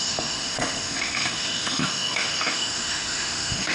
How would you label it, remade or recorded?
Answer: remade